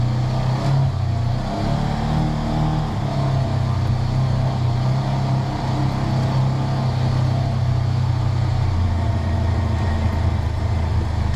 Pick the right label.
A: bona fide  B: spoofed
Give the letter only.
A